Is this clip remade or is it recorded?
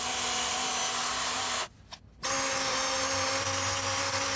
recorded